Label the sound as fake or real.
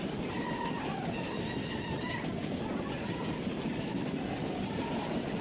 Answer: real